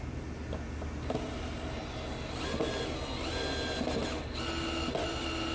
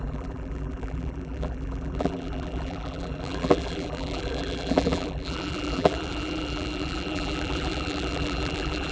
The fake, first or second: second